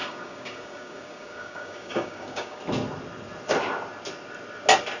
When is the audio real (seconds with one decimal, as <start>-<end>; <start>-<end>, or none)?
2.6-5.0